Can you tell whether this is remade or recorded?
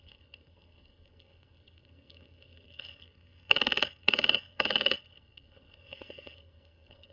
remade